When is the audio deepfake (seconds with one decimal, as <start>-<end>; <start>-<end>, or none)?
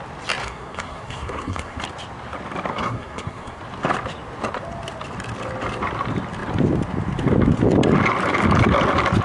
0.4-1.8; 2.7-3.6